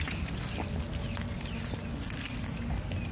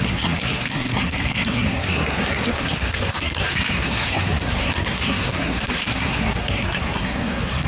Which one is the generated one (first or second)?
second